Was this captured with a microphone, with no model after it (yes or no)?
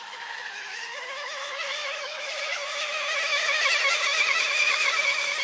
no